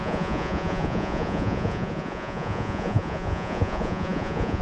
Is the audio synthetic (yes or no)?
yes